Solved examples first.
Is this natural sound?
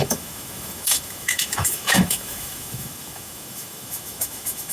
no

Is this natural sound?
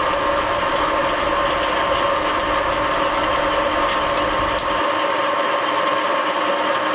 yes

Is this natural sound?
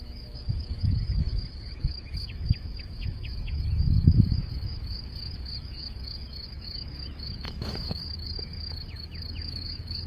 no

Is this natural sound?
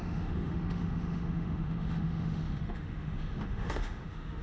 no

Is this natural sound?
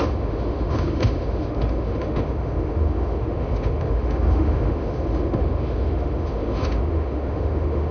no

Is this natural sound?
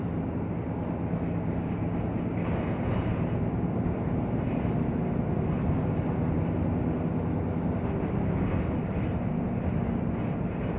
yes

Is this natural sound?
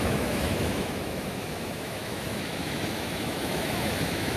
no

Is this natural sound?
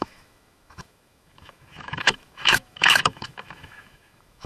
no